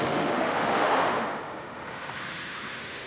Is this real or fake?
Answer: fake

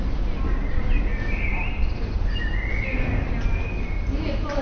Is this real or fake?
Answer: real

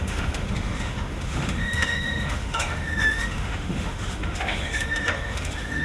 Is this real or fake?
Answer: fake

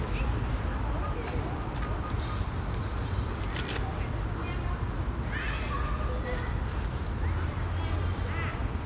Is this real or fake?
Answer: real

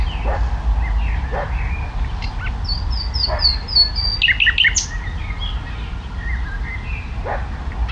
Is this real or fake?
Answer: real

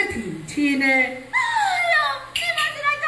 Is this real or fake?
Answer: real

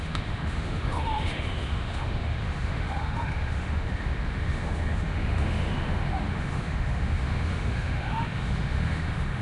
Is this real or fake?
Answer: fake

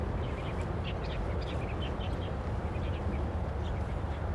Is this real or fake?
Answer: real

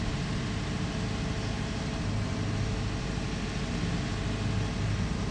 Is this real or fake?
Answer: real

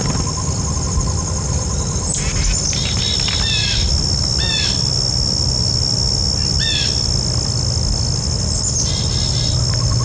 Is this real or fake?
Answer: real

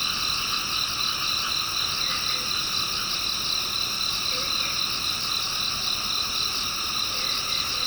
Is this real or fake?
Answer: real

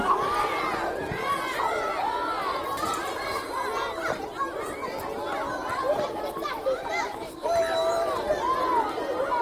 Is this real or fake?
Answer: real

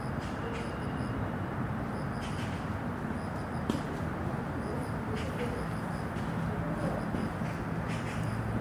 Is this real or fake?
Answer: real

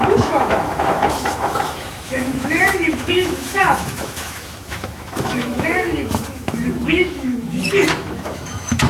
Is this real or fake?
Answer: fake